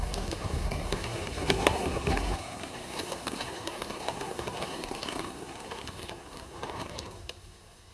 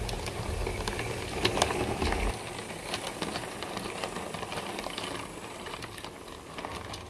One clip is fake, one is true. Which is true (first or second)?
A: second